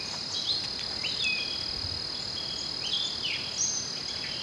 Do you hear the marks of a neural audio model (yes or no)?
no